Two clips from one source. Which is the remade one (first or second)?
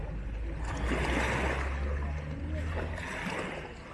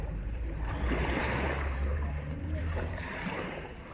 second